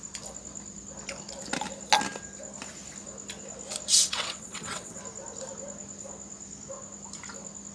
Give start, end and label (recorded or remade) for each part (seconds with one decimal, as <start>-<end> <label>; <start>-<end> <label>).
0.0-4.0 recorded; 4.0-5.0 remade; 5.0-7.7 recorded